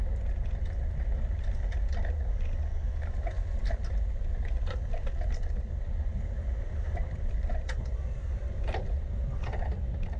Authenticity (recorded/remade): recorded